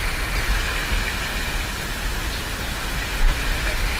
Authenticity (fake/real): real